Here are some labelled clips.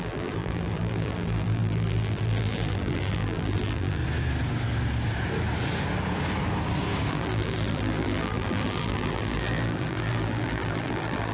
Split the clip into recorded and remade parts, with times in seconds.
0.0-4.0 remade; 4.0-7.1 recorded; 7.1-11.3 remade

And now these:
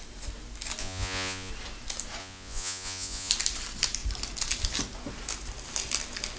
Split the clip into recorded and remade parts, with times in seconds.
0.0-0.8 recorded; 0.8-1.5 remade; 1.5-2.2 recorded; 2.2-3.3 remade; 3.3-6.4 recorded